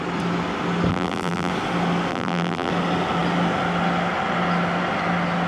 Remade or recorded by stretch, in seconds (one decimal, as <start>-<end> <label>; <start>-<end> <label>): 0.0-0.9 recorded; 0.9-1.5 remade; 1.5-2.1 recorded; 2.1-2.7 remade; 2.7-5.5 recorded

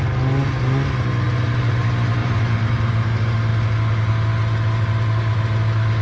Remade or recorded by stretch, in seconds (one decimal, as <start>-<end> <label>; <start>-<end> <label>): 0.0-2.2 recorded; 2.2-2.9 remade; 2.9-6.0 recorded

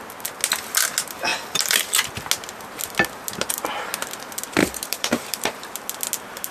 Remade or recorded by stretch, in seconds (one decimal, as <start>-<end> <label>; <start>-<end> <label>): 0.0-4.6 recorded; 4.6-5.6 remade; 5.6-6.5 recorded